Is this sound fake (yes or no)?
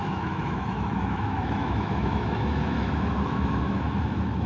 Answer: yes